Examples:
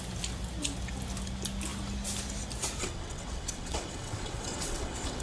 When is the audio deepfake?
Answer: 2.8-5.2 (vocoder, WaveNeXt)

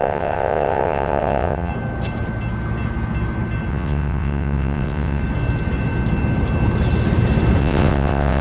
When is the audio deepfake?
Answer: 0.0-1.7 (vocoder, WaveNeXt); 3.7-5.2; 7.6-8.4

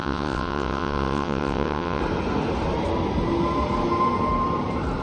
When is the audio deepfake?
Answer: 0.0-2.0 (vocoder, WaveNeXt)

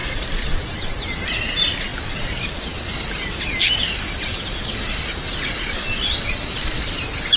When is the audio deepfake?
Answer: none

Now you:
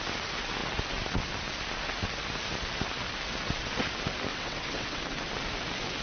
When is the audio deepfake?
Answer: 4.3-5.0 (vocoder, WaveNeXt)

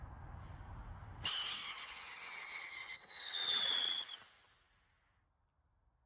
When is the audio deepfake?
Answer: 1.6-4.0 (vocoder, WaveNeXt)

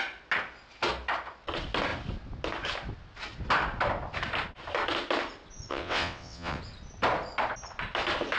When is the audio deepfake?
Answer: 5.7-6.6 (vocoder, WaveNeXt)